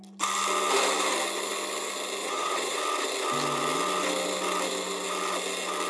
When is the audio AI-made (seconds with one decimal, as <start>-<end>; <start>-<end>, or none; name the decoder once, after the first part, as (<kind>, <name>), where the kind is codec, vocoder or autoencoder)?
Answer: 2.2-2.8 (vocoder, WaveNeXt)